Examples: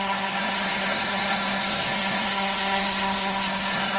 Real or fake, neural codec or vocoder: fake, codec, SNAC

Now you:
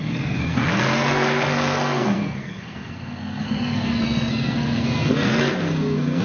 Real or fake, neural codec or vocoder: fake, codec, SNAC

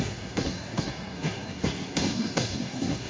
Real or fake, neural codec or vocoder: fake, codec, SNAC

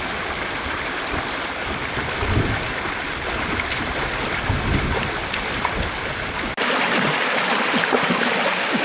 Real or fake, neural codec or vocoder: real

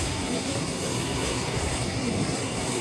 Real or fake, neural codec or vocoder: fake, codec, SNAC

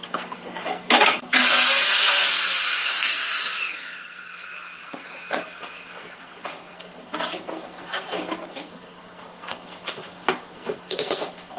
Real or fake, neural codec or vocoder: fake, codec, SNAC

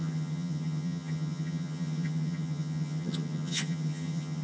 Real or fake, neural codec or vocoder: fake, vocoder, HiFi-GAN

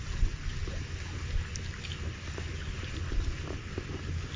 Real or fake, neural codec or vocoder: real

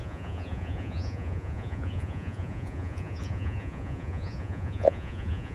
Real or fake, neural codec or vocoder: fake, vocoder, Vocos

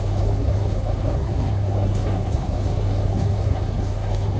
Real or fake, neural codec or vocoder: fake, codec, SNAC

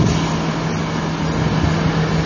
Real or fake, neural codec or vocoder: real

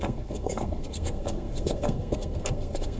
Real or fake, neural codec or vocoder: fake, codec, SNAC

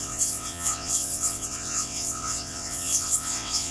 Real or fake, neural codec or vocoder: fake, vocoder, WaveNeXt